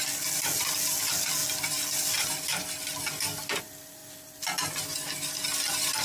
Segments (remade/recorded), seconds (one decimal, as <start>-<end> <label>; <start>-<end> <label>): 0.0-1.4 recorded; 1.4-3.6 remade; 3.6-6.0 recorded